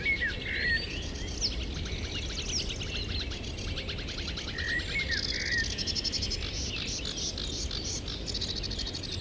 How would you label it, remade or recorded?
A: recorded